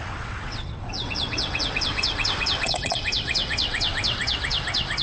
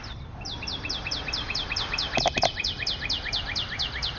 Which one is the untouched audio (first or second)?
second